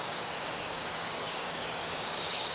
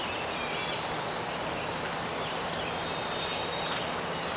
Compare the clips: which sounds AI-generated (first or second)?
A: first